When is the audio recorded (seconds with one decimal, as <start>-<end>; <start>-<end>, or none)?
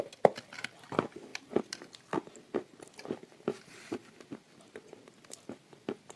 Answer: 0.0-6.2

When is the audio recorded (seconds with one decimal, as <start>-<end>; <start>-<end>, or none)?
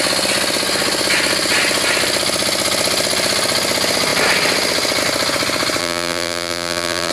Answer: 0.0-5.8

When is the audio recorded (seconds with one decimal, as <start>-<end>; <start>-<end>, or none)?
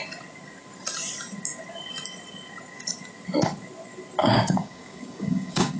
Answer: 0.0-4.2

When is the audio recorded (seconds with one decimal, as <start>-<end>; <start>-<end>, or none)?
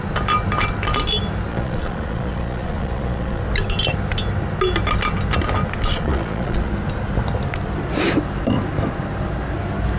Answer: 0.0-1.5; 3.4-5.9; 6.7-10.0